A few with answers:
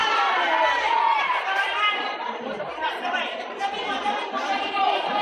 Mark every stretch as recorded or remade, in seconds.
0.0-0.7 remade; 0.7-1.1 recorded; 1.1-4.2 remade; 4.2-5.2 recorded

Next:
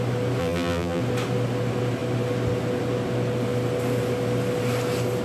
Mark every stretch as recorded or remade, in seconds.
0.0-0.4 recorded; 0.4-1.0 remade; 1.0-5.2 recorded

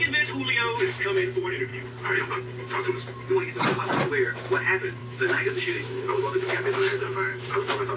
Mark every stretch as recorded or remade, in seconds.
0.0-5.0 recorded; 5.0-7.5 remade; 7.5-8.0 recorded

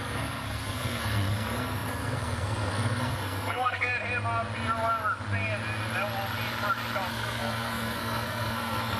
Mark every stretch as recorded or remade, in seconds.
0.0-3.9 remade; 3.9-7.1 recorded; 7.1-9.0 remade